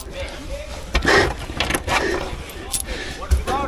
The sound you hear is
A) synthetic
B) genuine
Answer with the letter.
B